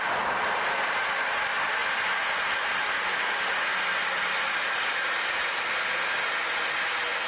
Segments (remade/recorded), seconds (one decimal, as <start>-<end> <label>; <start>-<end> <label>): 0.0-7.3 recorded